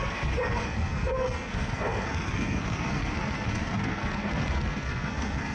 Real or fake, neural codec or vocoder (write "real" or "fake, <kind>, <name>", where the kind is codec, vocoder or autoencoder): fake, codec, SNAC